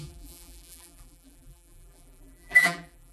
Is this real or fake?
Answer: fake